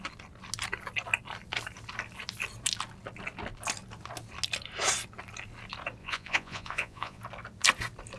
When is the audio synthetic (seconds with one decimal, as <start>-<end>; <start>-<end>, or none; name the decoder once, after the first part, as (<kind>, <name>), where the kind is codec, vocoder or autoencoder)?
6.0-7.2 (vocoder, Vocos)